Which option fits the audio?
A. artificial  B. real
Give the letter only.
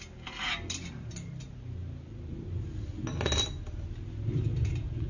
B